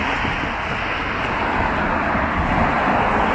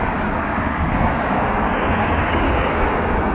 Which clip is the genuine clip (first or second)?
first